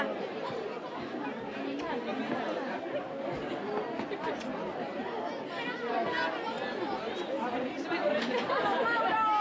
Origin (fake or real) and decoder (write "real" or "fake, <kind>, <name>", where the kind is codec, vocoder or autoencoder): real